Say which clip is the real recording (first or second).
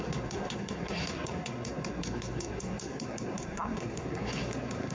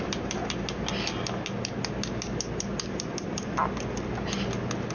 second